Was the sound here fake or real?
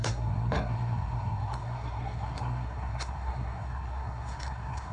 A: fake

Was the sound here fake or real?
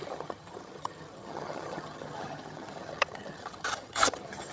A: fake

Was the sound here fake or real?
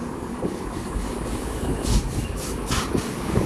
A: fake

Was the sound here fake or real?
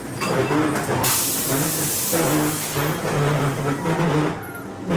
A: real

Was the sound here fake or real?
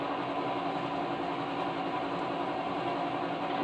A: real